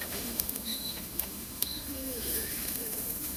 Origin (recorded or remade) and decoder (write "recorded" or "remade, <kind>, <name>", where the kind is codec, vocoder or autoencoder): remade, autoencoder, DAC-VAE